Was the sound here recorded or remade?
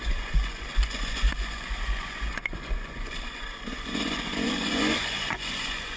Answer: remade